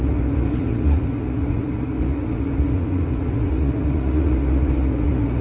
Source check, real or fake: fake